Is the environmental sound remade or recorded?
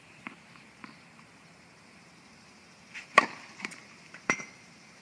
remade